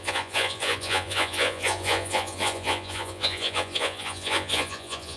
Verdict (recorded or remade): remade